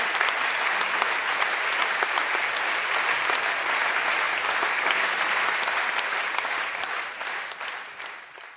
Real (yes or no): yes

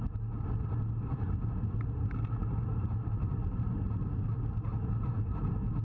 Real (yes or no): yes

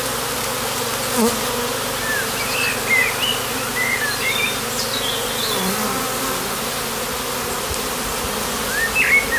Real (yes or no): yes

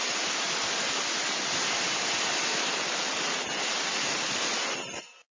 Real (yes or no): yes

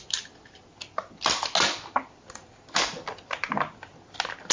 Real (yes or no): yes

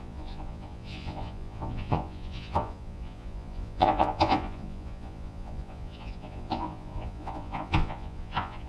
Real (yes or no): no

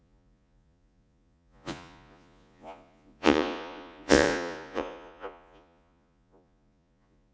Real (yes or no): no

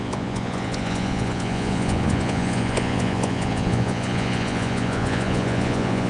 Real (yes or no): no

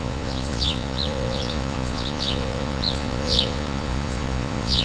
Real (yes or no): no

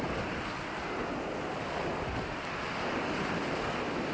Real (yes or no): yes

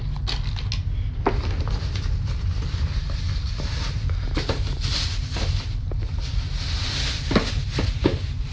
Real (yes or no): yes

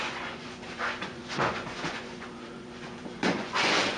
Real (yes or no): no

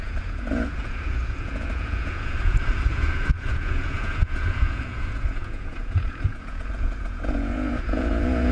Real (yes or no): no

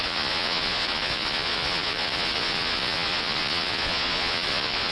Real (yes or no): no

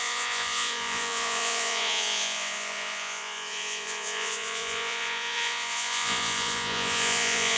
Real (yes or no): no